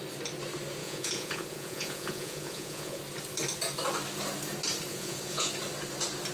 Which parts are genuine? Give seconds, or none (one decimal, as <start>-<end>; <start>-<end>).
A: 0.0-0.8; 3.0-4.9; 5.5-6.3